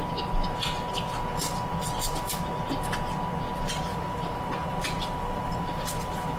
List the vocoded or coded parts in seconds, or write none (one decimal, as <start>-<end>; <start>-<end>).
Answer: 3.9-6.4